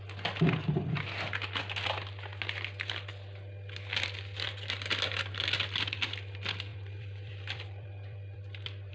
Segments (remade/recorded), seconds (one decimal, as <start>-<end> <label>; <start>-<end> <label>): 0.0-6.7 recorded; 6.7-8.9 remade

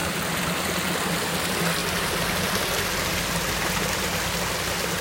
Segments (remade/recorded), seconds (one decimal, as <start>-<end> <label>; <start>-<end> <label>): 0.0-5.0 recorded

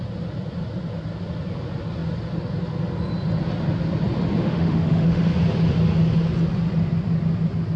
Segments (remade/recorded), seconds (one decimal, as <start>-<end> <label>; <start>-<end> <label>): 0.0-4.4 recorded; 4.4-5.2 remade; 5.2-7.8 recorded

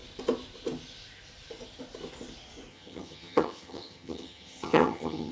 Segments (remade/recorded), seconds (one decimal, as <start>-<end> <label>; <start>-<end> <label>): 0.0-2.7 recorded; 2.7-5.3 remade

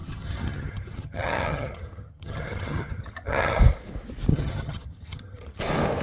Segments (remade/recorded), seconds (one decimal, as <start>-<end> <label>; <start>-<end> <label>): 0.0-3.6 remade; 3.6-4.3 recorded; 4.3-5.6 remade; 5.6-6.0 recorded

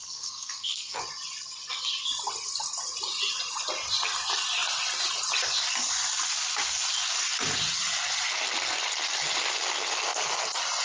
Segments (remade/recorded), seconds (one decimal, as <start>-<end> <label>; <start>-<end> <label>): 0.0-1.0 remade; 1.0-10.8 recorded

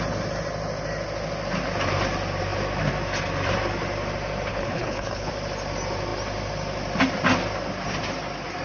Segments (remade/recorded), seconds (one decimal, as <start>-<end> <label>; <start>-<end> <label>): 0.0-4.5 recorded; 4.5-5.3 remade; 5.3-8.6 recorded